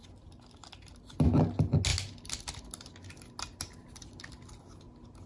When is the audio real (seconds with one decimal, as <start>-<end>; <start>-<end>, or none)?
0.0-5.3